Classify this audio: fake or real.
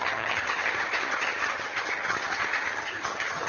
fake